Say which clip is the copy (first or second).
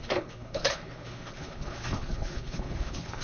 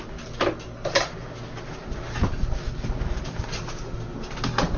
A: first